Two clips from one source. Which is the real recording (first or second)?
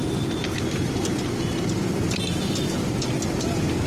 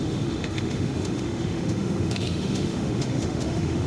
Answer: first